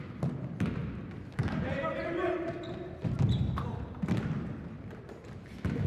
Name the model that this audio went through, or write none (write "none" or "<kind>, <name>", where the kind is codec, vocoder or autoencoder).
none